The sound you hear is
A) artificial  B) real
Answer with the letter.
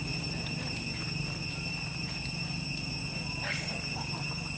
B